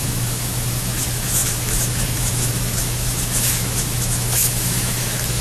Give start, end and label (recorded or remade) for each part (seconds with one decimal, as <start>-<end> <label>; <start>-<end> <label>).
0.0-5.4 remade